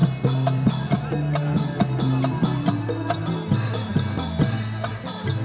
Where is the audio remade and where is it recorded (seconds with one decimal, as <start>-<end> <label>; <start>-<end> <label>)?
0.0-5.4 recorded